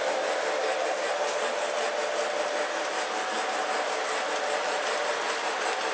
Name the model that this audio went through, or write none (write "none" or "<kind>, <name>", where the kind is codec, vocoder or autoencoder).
none